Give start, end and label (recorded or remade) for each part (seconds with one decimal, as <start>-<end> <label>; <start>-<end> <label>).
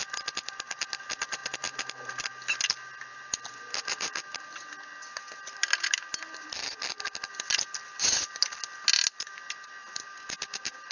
0.0-9.8 recorded; 9.8-10.4 remade; 10.4-10.9 recorded